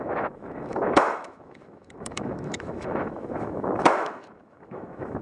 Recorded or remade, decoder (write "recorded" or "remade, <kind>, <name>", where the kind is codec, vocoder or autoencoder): remade, autoencoder, DAC-VAE